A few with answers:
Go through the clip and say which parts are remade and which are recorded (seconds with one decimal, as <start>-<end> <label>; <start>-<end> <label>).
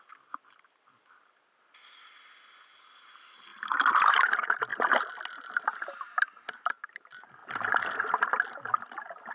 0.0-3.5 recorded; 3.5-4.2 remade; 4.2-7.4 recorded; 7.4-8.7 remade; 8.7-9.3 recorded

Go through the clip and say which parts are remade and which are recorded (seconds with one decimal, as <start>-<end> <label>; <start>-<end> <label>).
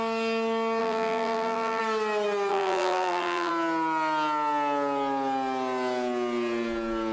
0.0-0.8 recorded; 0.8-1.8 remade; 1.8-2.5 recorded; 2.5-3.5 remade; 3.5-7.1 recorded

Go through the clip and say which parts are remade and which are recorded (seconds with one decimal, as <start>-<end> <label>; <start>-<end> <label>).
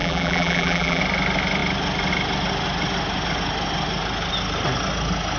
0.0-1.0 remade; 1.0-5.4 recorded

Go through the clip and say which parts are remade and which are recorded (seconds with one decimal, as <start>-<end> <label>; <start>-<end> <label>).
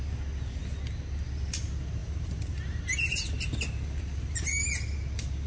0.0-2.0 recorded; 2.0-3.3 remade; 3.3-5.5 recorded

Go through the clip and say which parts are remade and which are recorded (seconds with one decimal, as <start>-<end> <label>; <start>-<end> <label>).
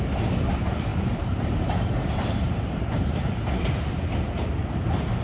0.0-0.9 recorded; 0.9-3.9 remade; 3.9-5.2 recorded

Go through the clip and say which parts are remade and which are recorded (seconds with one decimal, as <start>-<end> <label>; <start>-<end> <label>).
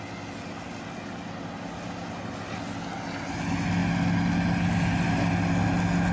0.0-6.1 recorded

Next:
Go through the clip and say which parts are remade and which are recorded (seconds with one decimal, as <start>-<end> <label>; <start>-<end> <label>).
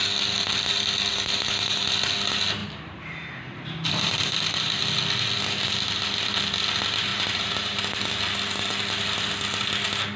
0.0-1.1 recorded; 1.1-1.8 remade; 1.8-2.6 recorded; 2.6-4.8 remade; 4.8-7.1 recorded; 7.1-7.8 remade; 7.8-10.2 recorded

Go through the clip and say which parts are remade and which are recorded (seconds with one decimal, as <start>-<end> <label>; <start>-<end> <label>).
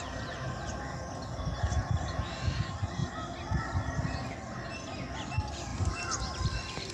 0.0-5.7 recorded; 5.7-6.5 remade; 6.5-6.9 recorded